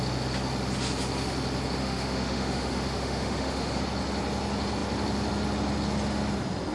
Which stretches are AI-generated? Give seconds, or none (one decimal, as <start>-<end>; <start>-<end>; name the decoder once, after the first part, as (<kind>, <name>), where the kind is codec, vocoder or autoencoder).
1.8-3.8 (autoencoder, DAC-VAE)